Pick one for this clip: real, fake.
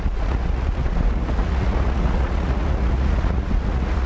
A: fake